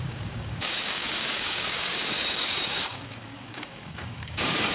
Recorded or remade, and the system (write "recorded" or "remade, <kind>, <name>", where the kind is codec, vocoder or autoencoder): remade, codec, DAC